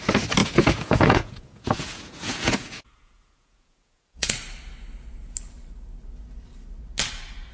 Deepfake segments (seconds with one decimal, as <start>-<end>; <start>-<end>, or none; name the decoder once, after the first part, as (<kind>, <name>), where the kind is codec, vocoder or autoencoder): 0.4-4.3 (vocoder, Vocos)